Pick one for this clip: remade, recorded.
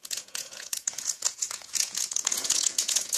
remade